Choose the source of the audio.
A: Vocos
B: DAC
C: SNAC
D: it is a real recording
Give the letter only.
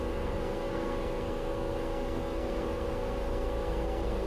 C